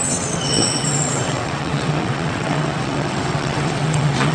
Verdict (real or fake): fake